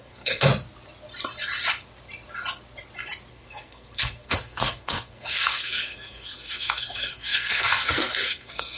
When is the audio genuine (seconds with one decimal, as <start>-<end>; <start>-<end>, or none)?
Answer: 0.5-3.3